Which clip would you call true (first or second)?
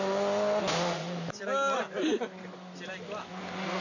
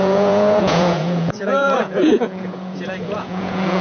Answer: first